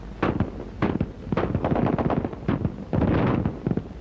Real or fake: real